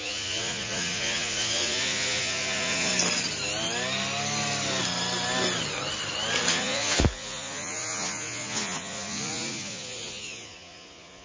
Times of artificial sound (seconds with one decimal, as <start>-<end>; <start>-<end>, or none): 0.0-2.9; 6.5-11.2